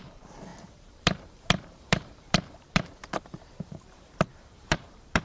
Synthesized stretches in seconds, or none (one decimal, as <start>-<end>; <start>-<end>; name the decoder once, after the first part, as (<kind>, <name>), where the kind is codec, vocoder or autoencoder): 0.0-5.2 (vocoder, BigVGAN v2)